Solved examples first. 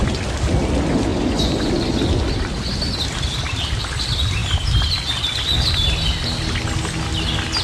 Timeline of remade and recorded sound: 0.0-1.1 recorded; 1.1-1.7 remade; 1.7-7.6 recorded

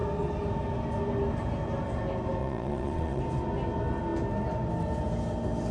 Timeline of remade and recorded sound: 0.0-2.4 recorded; 2.4-3.2 remade; 3.2-5.7 recorded

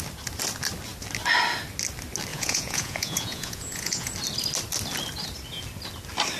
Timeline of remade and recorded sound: 0.0-2.3 recorded; 2.3-4.1 remade; 4.1-6.4 recorded

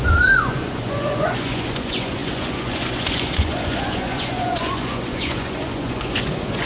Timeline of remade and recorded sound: 0.0-6.7 remade

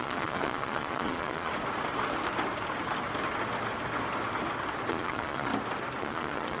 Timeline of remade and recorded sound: 0.0-1.5 remade; 1.5-4.9 recorded; 4.9-5.5 remade; 5.5-6.0 recorded; 6.0-6.6 remade

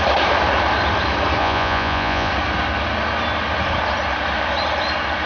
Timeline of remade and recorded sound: 0.0-1.4 recorded; 1.4-2.3 remade; 2.3-5.3 recorded

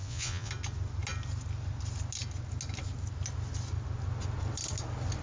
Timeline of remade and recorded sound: 0.0-0.5 remade; 0.5-5.2 recorded